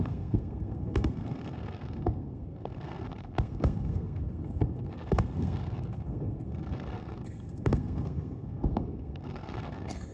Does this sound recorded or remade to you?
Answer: remade